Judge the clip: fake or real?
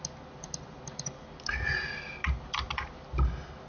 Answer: real